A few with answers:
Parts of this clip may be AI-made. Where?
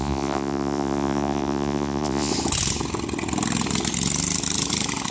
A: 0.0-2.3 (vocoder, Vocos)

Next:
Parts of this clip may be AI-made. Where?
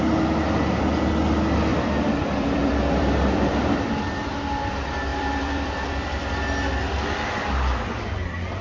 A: 1.7-4.3 (vocoder, BigVGAN v2); 5.1-6.3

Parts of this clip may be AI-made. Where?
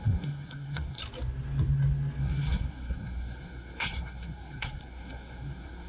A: 0.0-1.0 (codec, SNAC); 2.2-5.9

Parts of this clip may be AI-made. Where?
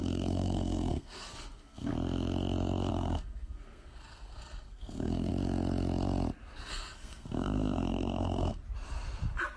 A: 0.0-1.9 (codec, SNAC); 2.9-5.3; 6.7-8.6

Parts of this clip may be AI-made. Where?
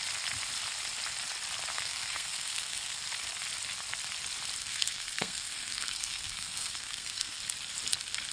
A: 1.7-3.0 (codec, SNAC); 4.6-7.4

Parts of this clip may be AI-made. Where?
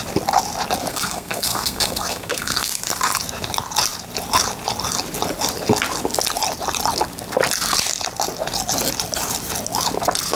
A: 0.9-2.7 (codec, SNAC)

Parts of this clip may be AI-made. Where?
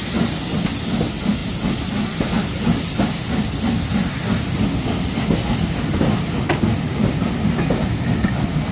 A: none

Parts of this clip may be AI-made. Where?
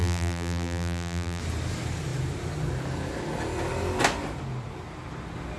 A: 0.0-1.4 (vocoder, BigVGAN v2)